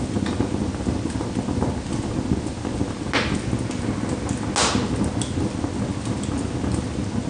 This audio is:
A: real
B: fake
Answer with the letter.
A